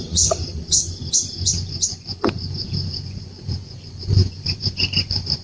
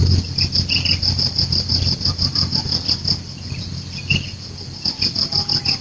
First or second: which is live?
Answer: second